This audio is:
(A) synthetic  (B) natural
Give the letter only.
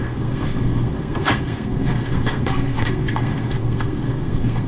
A